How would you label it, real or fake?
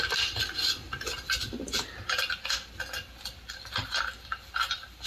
fake